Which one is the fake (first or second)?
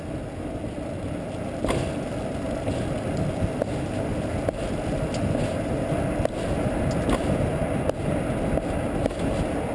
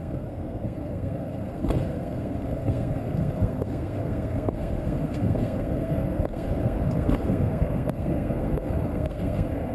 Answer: second